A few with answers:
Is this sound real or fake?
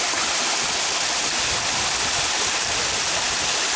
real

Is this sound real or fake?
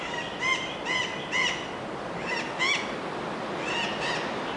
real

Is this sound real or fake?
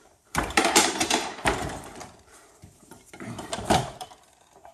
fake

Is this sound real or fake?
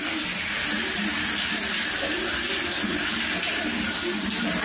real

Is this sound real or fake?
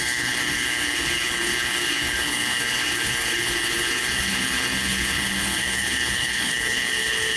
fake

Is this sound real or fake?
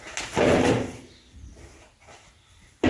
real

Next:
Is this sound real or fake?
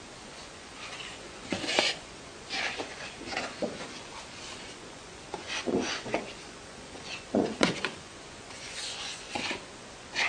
fake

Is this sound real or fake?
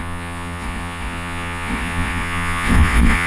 fake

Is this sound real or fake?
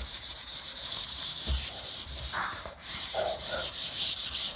fake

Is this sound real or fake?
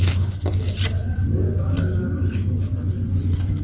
real